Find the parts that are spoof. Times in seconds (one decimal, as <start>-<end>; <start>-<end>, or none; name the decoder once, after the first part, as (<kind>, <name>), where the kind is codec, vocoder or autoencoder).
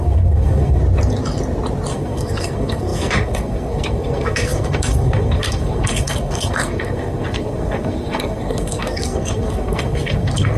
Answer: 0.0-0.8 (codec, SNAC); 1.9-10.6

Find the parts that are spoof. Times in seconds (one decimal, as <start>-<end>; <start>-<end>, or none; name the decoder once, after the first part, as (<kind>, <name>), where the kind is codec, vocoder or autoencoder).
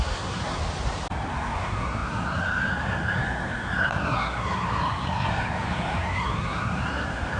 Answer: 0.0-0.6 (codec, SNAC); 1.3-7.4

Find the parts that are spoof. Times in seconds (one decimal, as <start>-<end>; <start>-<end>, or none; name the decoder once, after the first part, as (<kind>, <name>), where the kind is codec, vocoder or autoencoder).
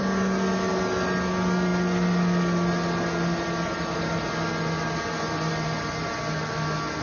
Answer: none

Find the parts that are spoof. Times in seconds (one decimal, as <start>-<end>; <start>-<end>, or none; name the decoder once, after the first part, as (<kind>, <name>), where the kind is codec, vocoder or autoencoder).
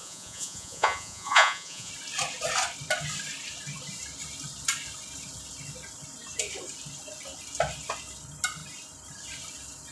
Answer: 0.0-1.9 (vocoder, Vocos)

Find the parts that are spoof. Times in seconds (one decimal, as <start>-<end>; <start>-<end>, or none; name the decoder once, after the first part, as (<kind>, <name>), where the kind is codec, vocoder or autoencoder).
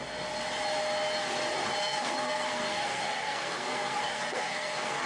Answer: 1.8-5.1 (codec, SNAC)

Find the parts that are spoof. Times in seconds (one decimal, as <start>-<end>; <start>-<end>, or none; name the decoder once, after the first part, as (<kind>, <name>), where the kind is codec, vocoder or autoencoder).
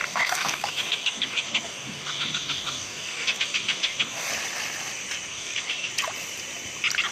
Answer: 0.0-4.3 (codec, DAC); 5.3-5.9